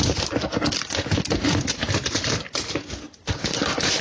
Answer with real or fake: real